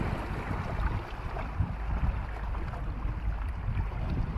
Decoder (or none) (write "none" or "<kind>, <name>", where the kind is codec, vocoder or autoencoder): none